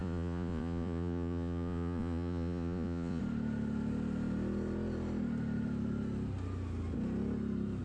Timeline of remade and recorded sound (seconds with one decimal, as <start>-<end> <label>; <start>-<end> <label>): 0.0-3.2 remade; 3.2-7.8 recorded